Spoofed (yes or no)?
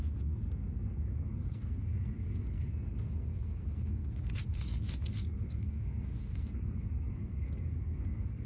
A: yes